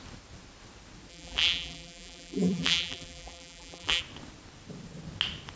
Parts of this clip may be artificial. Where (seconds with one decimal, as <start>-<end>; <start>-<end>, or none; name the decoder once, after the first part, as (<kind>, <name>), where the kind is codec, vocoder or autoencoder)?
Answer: 1.1-4.0 (vocoder, BigVGAN v2)